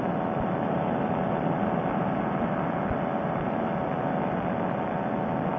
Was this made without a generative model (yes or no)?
yes